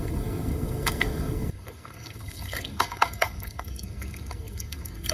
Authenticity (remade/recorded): remade